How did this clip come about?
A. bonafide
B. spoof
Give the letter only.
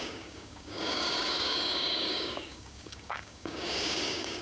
B